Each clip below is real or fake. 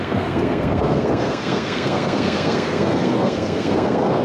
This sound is fake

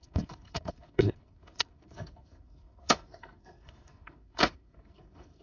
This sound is fake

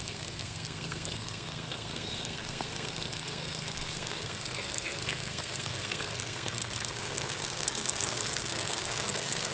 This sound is fake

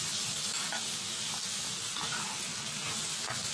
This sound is real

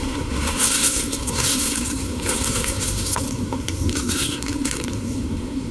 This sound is fake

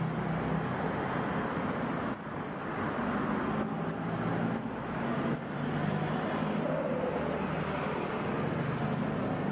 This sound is real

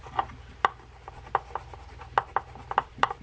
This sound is real